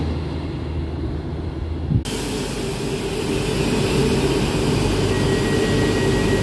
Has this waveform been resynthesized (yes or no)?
no